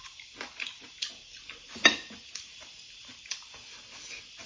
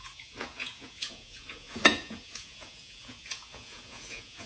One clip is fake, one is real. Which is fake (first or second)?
second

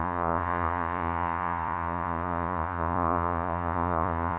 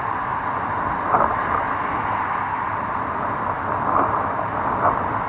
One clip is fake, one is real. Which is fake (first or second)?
first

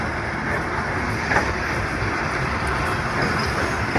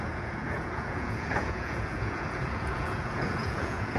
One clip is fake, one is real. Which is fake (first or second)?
second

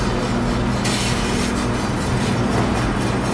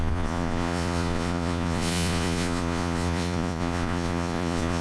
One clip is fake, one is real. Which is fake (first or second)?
second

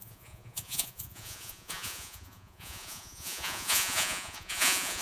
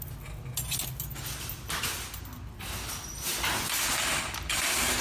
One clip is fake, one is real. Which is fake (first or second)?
first